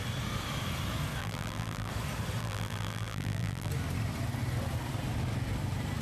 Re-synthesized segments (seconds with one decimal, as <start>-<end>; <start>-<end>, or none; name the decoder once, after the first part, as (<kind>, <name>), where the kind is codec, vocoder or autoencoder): 1.2-1.9 (vocoder, BigVGAN v2); 2.4-3.7